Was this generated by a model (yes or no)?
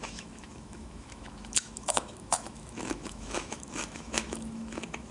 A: yes